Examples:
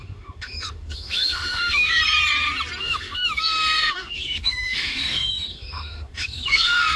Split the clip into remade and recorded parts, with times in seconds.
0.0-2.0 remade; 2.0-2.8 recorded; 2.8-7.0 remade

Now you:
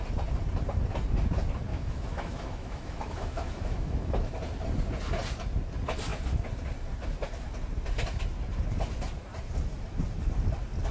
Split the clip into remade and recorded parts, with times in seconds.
0.0-1.7 recorded; 1.7-4.4 remade; 4.4-10.9 recorded

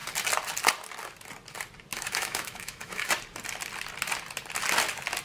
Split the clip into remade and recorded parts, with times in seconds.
0.0-1.9 recorded; 1.9-3.1 remade; 3.1-5.2 recorded

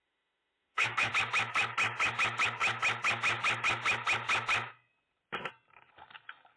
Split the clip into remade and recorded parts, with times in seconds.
0.0-1.1 remade; 1.1-6.6 recorded

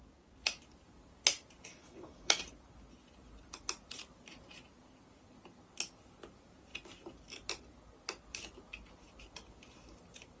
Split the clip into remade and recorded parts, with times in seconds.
0.0-1.7 recorded; 1.7-2.4 remade; 2.4-10.4 recorded